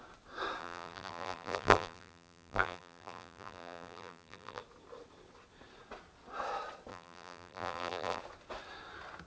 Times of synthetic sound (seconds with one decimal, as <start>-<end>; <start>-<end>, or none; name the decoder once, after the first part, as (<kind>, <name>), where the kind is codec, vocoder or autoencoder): 0.6-4.6 (vocoder, BigVGAN v2); 6.9-8.2